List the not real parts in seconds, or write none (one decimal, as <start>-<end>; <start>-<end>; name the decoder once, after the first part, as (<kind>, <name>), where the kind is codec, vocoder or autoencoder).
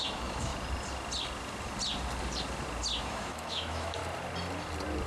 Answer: 0.0-0.5 (autoencoder, DAC-VAE); 3.0-4.0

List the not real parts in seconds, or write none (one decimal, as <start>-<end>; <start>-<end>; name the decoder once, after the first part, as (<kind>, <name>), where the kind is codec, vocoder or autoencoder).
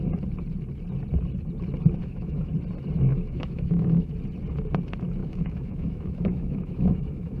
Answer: 2.0-2.5 (autoencoder, DAC-VAE); 3.1-4.1; 5.2-7.4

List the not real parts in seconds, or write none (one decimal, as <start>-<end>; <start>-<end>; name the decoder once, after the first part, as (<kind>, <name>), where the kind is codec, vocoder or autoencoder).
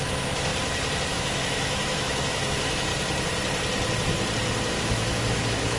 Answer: 0.0-0.5 (autoencoder, DAC-VAE); 1.1-2.9; 4.7-5.8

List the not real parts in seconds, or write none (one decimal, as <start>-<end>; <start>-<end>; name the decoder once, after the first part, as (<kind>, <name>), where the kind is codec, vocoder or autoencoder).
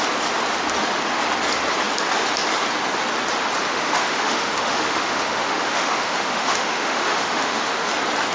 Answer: 3.7-7.9 (autoencoder, DAC-VAE)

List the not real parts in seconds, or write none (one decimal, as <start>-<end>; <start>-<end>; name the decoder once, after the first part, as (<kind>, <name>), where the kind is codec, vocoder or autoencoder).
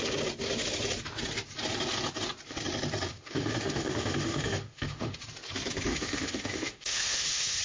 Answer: 3.1-5.2 (autoencoder, DAC-VAE); 5.9-7.6